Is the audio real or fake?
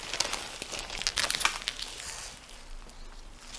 real